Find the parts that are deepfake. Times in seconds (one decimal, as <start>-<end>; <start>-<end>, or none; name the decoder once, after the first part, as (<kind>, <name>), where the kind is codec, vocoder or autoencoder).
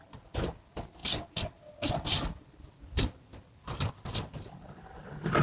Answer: none